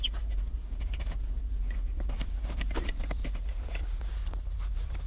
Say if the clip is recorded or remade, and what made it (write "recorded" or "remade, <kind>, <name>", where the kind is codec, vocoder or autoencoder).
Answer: remade, vocoder, BigVGAN v2